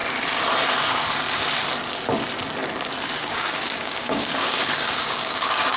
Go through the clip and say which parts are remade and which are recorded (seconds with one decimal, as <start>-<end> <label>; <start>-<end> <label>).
0.0-3.2 recorded; 3.2-5.8 remade